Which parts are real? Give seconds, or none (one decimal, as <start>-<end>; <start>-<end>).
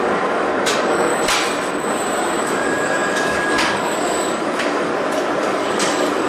1.1-2.4; 4.9-5.4